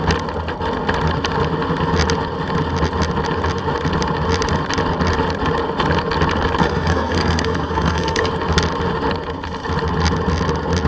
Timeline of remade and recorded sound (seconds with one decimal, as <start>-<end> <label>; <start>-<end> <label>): 0.0-6.6 recorded; 6.6-8.3 remade; 8.3-10.9 recorded